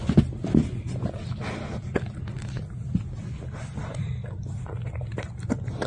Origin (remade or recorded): recorded